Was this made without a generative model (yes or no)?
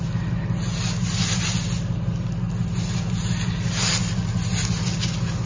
yes